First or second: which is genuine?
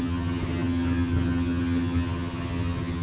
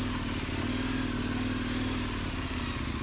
second